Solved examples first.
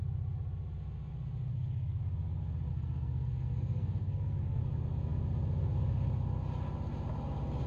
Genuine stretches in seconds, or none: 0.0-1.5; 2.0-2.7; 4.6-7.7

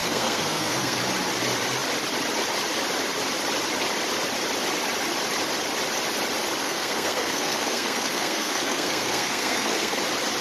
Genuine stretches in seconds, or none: 1.0-6.6; 10.0-10.4

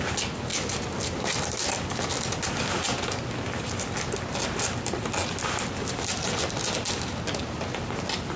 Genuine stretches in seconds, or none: 0.0-8.4

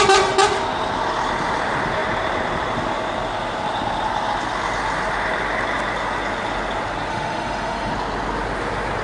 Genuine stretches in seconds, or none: 0.0-7.1; 7.9-9.0